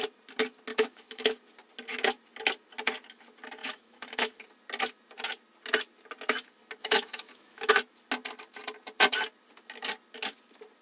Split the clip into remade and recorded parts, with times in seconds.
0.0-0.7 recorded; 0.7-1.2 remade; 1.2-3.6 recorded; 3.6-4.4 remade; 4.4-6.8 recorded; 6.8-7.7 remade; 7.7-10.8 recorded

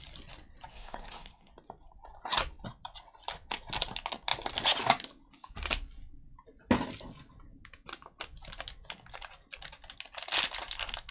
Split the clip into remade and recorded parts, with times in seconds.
0.0-0.7 recorded; 0.7-1.5 remade; 1.5-11.1 recorded

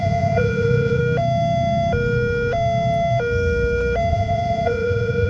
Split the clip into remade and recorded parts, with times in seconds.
0.0-1.0 remade; 1.0-4.1 recorded; 4.1-5.3 remade